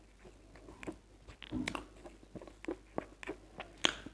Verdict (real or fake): real